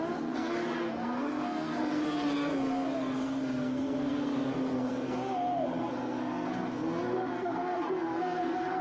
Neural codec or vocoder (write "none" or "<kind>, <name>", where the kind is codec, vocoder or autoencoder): codec, SNAC